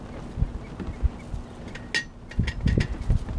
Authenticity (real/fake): real